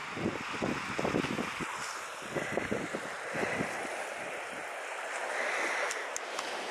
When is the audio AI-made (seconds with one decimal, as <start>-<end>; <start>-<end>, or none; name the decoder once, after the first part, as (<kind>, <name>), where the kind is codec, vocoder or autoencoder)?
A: none